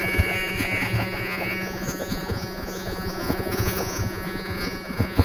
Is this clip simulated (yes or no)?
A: yes